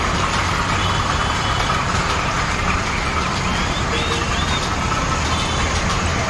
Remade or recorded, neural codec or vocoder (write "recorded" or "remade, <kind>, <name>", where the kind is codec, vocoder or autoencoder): recorded